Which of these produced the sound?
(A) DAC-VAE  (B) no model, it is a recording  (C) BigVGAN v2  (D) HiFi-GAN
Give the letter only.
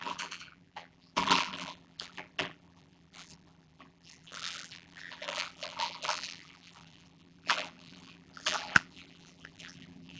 C